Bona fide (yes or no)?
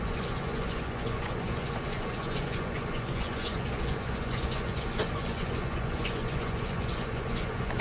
no